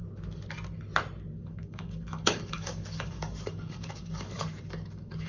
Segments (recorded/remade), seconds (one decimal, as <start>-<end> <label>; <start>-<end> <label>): 0.0-1.4 recorded; 1.4-5.3 remade